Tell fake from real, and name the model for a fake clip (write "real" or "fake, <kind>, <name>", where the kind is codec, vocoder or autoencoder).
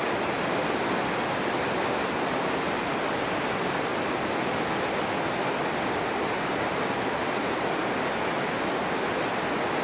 real